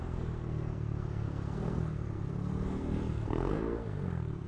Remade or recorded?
remade